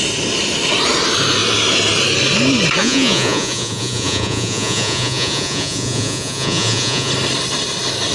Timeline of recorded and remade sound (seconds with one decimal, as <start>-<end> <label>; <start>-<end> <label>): 0.0-2.8 recorded; 2.8-7.1 remade; 7.1-8.1 recorded